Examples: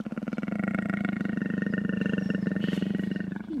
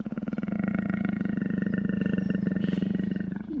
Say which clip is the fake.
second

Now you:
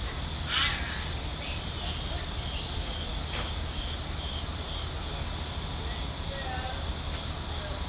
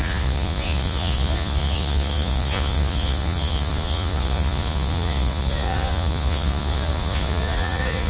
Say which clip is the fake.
second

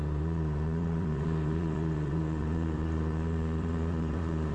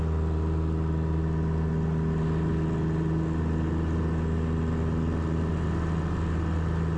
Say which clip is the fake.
first